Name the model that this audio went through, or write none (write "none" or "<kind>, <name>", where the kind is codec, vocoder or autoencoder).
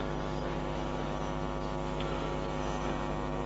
none